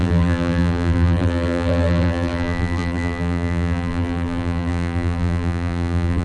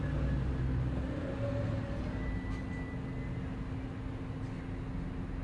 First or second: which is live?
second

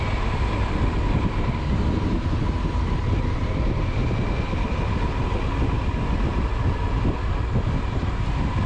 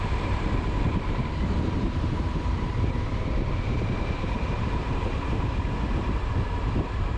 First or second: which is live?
first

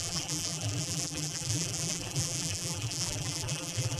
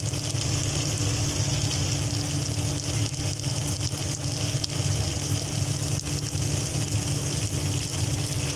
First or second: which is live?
second